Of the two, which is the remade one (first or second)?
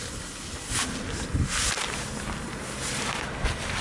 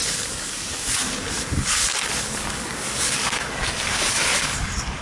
second